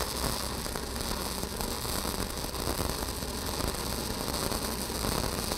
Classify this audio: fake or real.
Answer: real